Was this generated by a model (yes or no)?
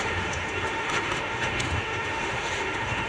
yes